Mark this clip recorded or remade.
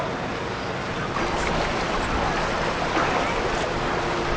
recorded